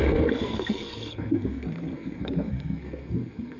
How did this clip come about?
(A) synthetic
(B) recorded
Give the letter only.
A